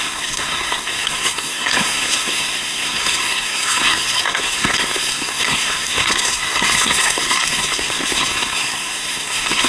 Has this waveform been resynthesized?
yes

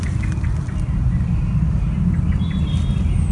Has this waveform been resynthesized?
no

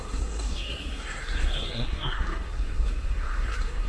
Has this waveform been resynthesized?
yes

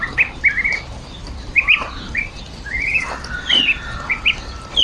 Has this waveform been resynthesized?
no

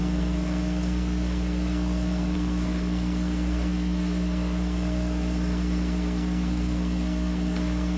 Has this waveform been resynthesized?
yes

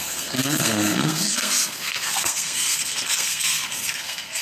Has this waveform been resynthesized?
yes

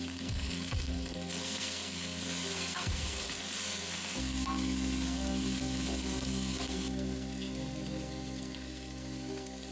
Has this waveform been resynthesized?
yes